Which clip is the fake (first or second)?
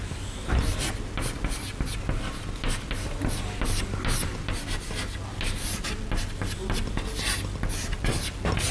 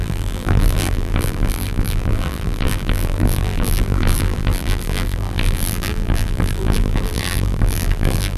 second